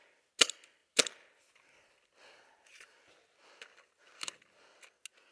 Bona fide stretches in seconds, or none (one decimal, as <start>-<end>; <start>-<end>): 0.0-5.3